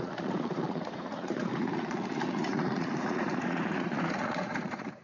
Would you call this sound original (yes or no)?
no